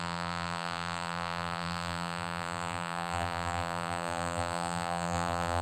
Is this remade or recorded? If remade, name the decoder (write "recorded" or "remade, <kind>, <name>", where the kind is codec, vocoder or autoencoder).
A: remade, vocoder, BigVGAN v2